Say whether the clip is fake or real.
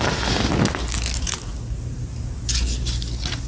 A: real